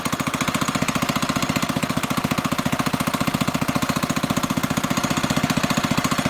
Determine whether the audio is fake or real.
real